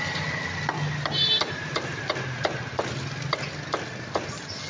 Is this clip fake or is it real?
real